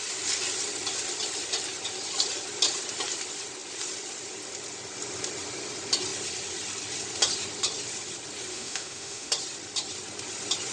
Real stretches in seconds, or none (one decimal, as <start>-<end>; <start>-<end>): 0.0-8.5; 9.3-10.7